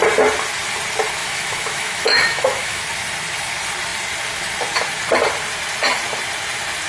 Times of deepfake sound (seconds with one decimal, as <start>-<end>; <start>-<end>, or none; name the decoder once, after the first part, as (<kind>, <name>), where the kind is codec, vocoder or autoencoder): 1.2-2.8 (autoencoder, DAC-VAE)